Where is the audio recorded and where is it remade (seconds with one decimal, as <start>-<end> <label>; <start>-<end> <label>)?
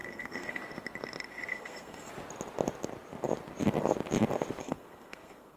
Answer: 0.0-0.6 remade; 0.6-1.5 recorded; 1.5-2.1 remade; 2.1-4.6 recorded; 4.6-5.6 remade